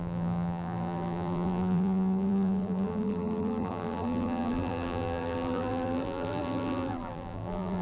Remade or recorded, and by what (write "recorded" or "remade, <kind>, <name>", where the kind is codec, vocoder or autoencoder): remade, vocoder, BigVGAN v2